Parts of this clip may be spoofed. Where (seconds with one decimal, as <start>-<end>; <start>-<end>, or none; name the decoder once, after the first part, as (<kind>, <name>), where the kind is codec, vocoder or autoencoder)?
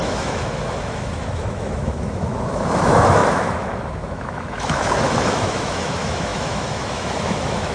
0.0-7.7 (autoencoder, DAC-VAE)